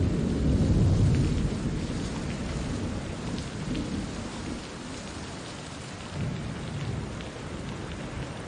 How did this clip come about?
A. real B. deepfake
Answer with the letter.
B